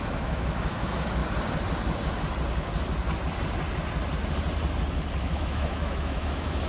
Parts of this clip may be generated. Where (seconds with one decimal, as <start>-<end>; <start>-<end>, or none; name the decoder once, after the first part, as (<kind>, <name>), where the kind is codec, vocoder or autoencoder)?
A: 0.0-1.2 (autoencoder, DAC-VAE); 5.2-6.7